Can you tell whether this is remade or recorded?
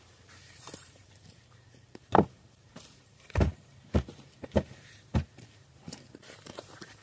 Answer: remade